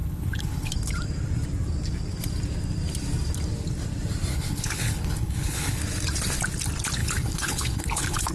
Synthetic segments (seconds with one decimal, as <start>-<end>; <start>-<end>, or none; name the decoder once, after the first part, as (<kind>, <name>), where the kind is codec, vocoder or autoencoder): 0.0-0.7 (codec, HILCodec); 4.3-5.8; 7.0-8.3